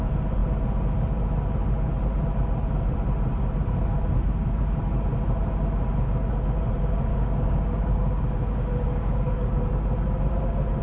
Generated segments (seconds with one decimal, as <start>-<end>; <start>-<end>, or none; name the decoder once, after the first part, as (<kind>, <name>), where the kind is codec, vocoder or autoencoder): 7.1-9.6 (codec, DAC)